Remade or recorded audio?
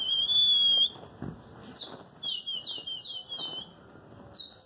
recorded